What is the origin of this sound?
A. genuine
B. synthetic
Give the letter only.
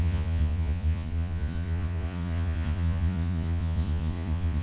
B